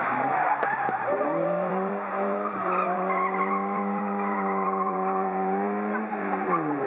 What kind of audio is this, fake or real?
fake